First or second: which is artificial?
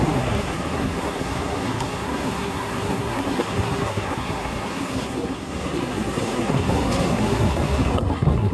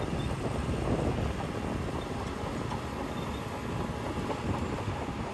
first